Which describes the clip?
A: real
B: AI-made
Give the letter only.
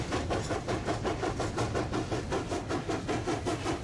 A